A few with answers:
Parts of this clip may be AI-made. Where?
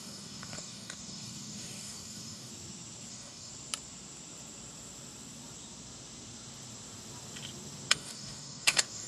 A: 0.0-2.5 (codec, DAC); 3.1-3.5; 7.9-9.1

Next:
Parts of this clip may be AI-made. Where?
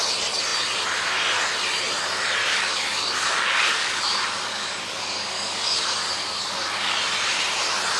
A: 2.4-7.0 (codec, DAC)